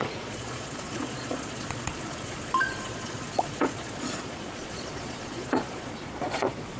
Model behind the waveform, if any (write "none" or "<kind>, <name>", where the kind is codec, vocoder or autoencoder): vocoder, Vocos